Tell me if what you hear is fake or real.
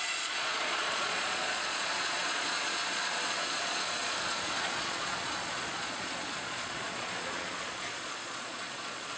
fake